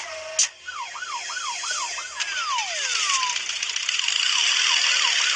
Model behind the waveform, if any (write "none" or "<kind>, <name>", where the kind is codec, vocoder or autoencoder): none